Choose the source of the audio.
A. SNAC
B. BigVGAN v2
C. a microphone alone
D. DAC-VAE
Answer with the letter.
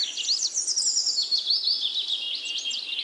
C